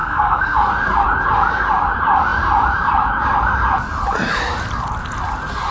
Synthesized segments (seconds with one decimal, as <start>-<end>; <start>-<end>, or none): 0.0-0.7